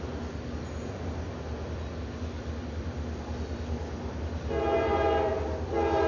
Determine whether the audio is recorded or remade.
recorded